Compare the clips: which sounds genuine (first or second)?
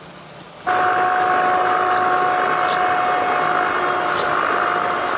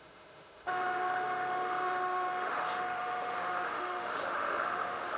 first